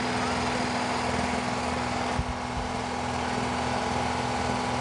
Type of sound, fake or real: real